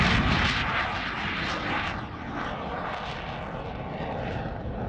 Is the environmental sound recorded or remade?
recorded